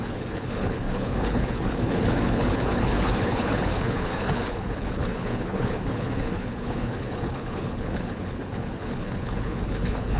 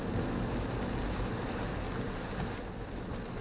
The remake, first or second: first